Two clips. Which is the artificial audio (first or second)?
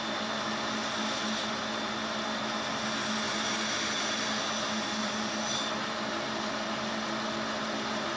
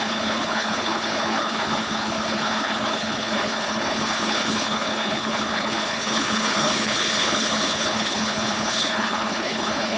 second